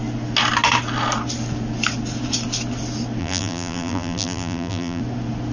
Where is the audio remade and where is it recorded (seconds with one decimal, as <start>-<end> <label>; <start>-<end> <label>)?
0.0-3.2 recorded; 3.2-5.0 remade; 5.0-5.5 recorded